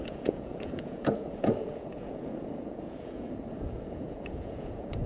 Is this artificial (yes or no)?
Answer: yes